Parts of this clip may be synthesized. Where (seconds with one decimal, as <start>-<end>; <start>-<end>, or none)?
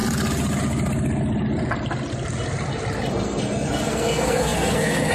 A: 3.1-5.1